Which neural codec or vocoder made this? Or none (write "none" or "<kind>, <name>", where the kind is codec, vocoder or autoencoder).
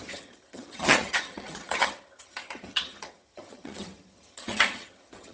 vocoder, HiFi-GAN